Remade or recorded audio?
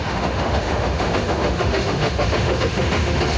remade